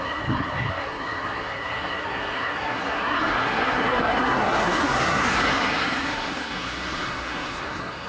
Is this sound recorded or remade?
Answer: remade